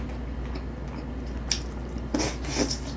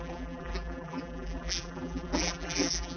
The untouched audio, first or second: first